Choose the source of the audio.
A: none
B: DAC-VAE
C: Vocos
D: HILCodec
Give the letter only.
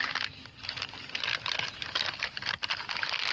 A